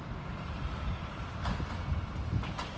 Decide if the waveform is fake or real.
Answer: real